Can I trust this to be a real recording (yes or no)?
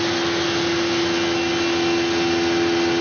yes